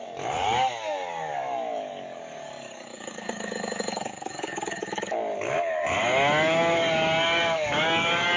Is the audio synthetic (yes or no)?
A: yes